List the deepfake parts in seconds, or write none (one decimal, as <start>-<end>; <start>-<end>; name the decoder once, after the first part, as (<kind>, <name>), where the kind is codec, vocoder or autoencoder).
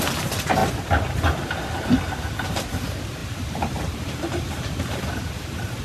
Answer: 3.2-5.2 (vocoder, BigVGAN v2)